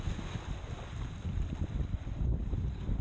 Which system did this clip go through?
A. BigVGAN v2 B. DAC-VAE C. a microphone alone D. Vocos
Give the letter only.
C